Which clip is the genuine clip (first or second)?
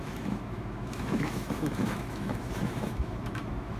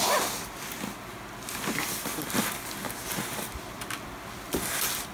second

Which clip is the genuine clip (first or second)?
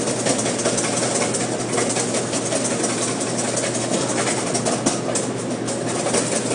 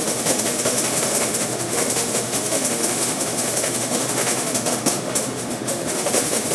first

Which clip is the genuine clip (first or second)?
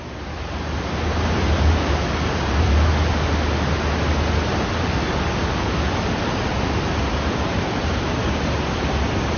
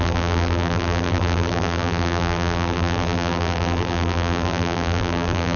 first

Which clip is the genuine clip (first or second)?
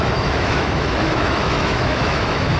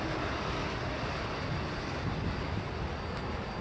second